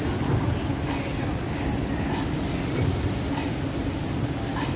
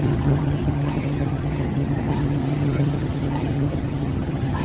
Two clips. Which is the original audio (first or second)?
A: first